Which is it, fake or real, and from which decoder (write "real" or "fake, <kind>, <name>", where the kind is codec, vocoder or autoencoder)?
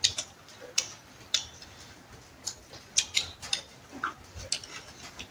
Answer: real